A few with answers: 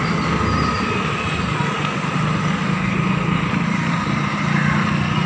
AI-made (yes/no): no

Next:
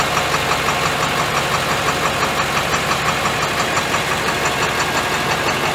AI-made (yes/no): no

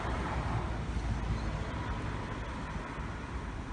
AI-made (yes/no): no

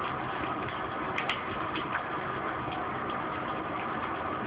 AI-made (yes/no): no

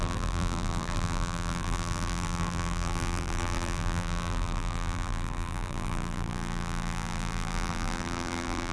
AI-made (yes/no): yes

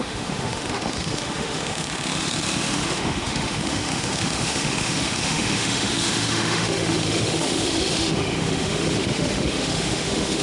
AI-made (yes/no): yes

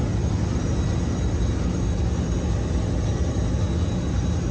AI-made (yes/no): no